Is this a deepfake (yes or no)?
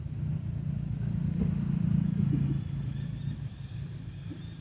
no